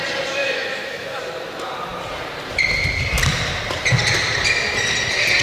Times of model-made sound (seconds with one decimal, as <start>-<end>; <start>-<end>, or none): 0.4-1.2